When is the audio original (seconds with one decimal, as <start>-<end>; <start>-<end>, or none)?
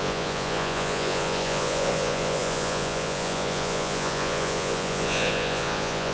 none